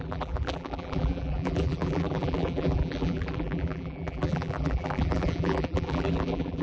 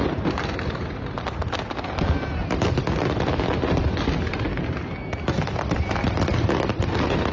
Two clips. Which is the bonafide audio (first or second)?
second